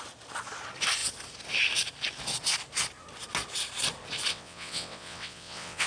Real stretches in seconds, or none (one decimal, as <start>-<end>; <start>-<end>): 0.0-4.3